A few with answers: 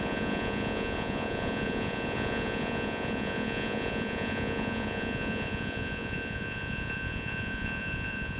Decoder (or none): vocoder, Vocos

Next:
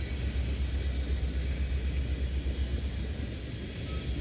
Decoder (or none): none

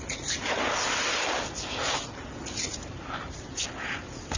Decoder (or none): none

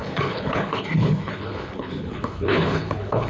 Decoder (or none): codec, HILCodec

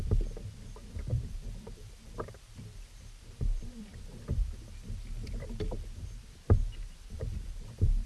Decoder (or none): vocoder, BigVGAN v2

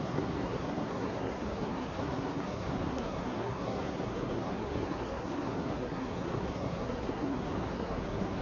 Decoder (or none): codec, SNAC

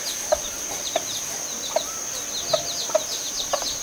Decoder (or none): none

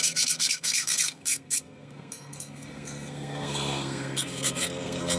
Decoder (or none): codec, SNAC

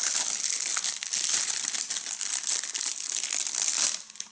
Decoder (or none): none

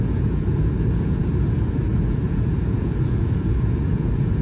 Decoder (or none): vocoder, Vocos